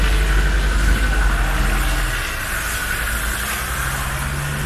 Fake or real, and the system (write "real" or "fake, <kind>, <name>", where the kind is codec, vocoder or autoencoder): real